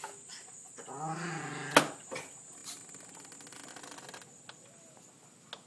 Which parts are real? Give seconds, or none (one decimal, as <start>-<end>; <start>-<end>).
0.0-5.7